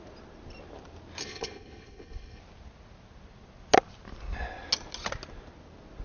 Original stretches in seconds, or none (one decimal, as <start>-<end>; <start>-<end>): 0.0-1.2; 2.4-6.0